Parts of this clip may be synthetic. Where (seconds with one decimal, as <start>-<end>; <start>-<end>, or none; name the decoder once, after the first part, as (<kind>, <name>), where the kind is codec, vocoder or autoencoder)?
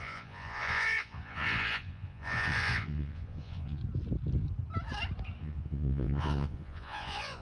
0.0-3.8 (vocoder, Vocos); 5.4-7.4